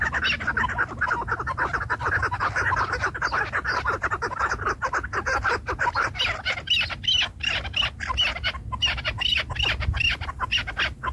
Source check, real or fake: real